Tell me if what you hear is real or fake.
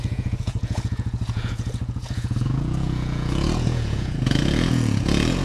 fake